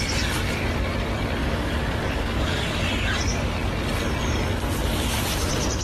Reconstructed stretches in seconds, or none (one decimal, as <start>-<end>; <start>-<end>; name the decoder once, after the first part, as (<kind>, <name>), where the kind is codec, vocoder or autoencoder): 1.4-2.7 (codec, DAC)